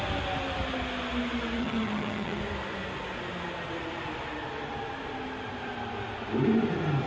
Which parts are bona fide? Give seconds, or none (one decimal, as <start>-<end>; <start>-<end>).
0.0-1.6; 2.4-7.1